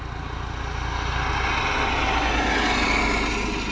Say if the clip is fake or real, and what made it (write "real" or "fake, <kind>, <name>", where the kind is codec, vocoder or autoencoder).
real